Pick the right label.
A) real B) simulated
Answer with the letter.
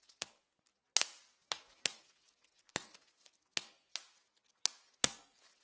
A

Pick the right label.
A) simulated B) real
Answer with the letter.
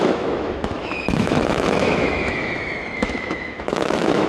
A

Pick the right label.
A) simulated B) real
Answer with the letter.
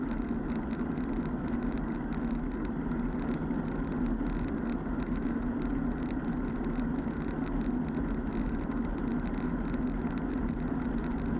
B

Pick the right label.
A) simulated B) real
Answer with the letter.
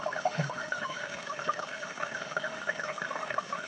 A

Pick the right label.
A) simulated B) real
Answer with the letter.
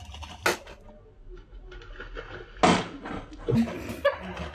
B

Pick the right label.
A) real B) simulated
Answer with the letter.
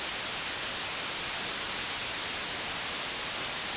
A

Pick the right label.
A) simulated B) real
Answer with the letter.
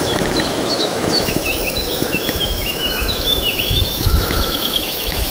A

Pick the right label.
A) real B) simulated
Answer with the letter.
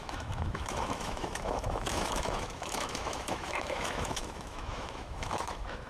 B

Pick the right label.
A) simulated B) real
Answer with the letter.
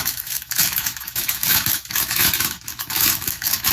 A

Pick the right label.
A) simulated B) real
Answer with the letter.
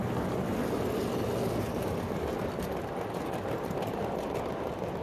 B